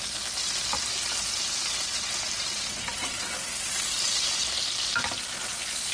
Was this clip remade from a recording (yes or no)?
no